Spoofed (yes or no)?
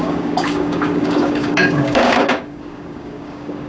yes